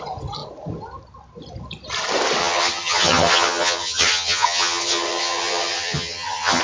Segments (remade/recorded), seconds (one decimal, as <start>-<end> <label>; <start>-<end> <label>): 0.0-2.4 recorded; 2.4-6.6 remade